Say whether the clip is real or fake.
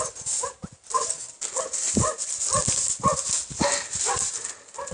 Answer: real